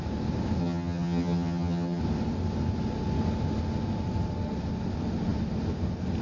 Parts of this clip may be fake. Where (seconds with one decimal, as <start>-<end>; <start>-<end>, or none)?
0.6-2.0